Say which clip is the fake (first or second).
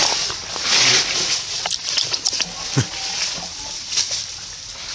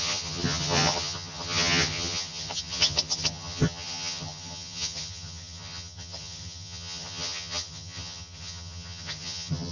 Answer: second